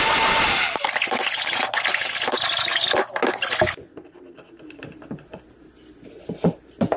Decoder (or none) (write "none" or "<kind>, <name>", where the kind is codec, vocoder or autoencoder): none